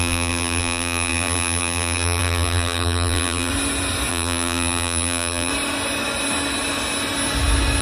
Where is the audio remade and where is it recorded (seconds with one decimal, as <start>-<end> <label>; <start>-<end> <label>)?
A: 0.0-3.5 remade; 3.5-4.1 recorded; 4.1-5.5 remade; 5.5-7.8 recorded